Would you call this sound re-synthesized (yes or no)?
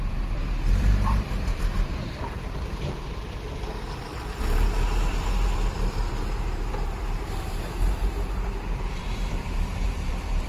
yes